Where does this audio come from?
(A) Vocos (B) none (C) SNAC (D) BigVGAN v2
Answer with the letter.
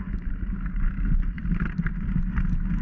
B